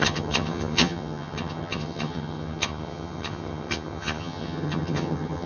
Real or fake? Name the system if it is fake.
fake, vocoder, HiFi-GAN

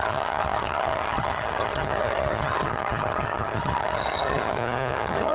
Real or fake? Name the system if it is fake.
fake, vocoder, HiFi-GAN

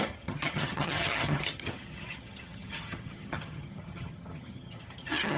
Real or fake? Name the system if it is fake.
fake, vocoder, HiFi-GAN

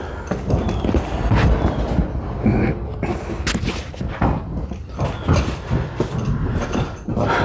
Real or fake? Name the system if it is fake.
real